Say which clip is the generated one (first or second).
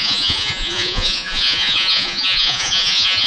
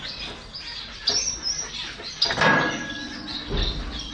first